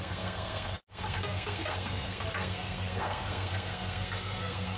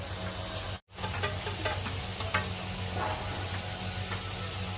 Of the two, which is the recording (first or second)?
second